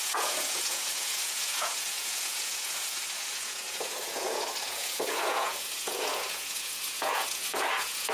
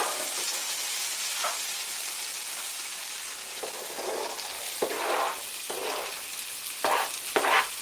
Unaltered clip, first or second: second